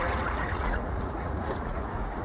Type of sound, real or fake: fake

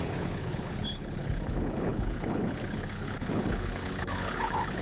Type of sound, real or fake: fake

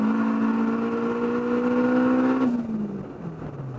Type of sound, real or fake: real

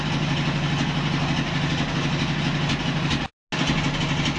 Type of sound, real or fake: real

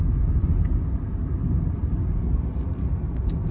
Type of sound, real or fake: real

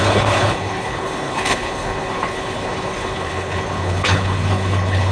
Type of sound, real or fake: fake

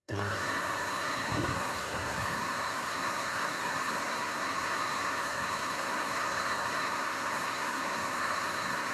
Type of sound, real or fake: fake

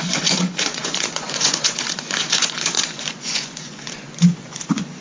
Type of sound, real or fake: fake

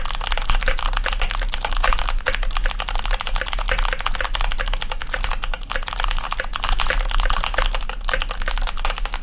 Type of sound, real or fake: real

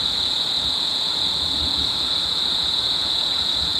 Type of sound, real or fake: fake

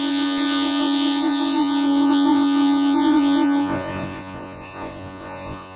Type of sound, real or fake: fake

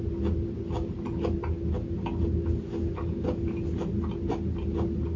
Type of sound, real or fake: real